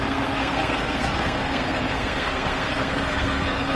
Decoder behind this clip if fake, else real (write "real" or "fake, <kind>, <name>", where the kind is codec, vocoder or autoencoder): fake, codec, SNAC